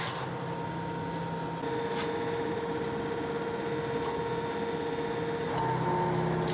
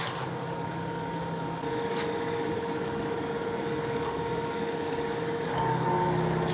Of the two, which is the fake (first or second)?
second